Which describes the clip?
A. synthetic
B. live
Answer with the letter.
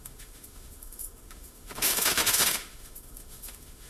A